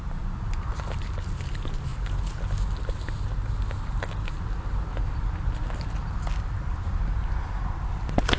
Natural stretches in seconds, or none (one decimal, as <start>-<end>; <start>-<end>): 1.9-5.9